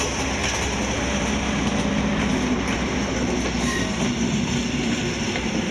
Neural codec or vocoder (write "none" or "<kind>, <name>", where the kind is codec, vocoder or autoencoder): none